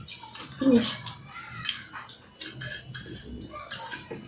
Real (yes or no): yes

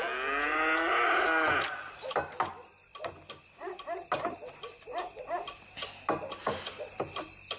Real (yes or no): yes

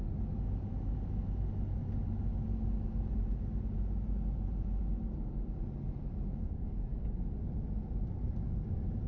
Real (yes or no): yes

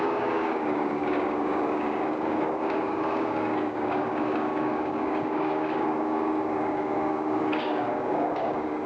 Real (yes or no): no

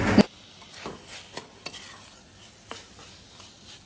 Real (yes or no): yes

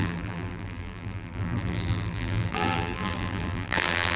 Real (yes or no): no